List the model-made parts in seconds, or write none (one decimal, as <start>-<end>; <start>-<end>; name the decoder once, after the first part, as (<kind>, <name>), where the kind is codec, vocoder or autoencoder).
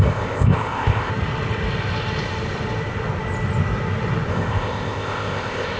0.0-1.1 (codec, ZipCodec); 4.3-5.8